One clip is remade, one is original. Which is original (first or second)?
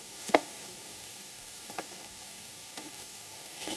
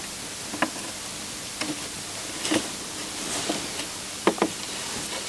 second